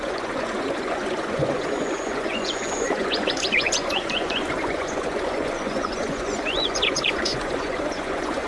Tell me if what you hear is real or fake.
fake